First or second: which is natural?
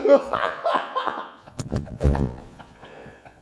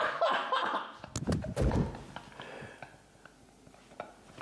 second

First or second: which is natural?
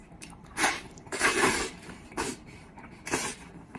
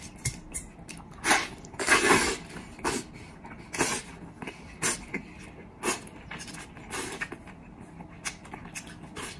second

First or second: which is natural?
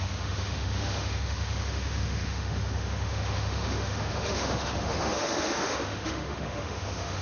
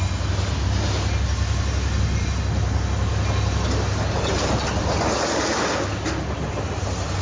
second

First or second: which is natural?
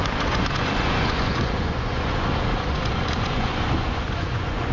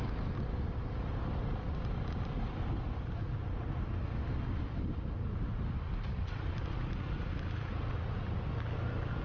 second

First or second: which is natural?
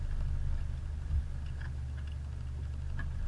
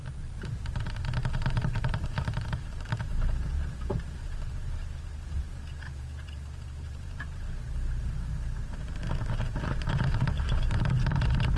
first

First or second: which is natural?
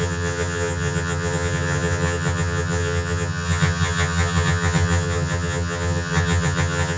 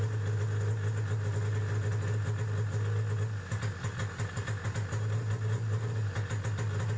second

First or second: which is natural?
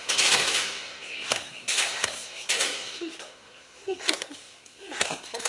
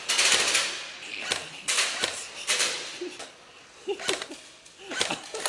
second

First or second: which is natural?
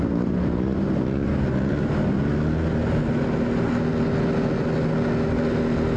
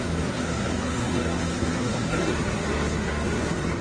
first